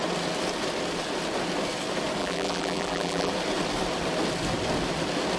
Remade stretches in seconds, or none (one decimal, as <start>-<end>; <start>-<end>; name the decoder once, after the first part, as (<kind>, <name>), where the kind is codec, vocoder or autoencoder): 2.2-3.3 (vocoder, BigVGAN v2)